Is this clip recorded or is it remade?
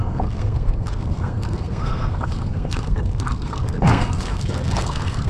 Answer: remade